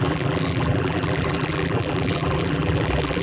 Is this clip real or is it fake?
fake